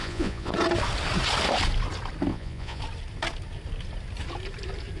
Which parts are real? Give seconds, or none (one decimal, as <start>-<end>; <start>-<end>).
0.5-2.3; 2.8-5.0